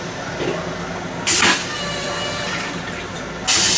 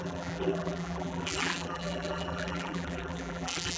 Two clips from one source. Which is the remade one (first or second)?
second